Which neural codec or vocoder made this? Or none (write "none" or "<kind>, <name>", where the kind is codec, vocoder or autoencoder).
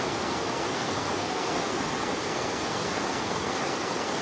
codec, SNAC